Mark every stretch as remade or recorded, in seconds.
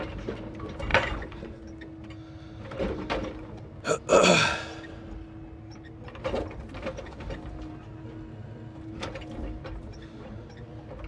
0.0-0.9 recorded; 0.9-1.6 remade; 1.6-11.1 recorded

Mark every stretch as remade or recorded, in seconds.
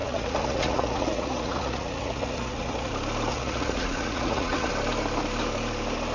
0.0-2.9 remade; 2.9-3.3 recorded; 3.3-4.7 remade; 4.7-6.1 recorded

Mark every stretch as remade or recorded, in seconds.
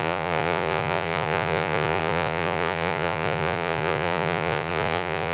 0.0-5.3 remade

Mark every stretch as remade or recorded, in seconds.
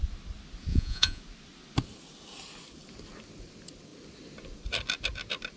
0.0-0.7 recorded; 0.7-1.2 remade; 1.2-5.6 recorded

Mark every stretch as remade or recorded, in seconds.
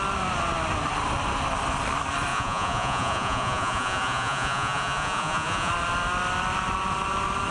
0.0-2.3 recorded; 2.3-5.7 remade; 5.7-7.5 recorded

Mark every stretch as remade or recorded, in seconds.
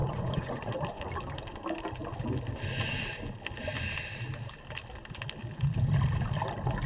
0.0-1.0 remade; 1.0-6.9 recorded